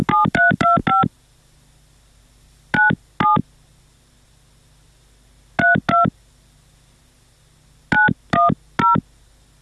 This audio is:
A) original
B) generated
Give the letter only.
A